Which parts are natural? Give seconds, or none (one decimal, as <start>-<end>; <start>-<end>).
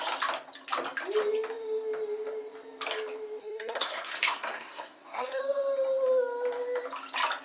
0.0-3.4; 5.4-7.4